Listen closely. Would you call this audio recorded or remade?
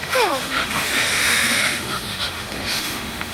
remade